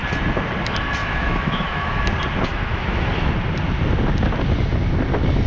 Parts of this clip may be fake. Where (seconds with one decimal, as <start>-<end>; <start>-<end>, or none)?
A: 1.0-2.0; 2.5-3.1